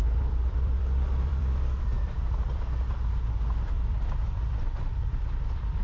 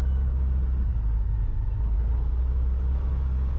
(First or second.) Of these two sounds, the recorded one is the second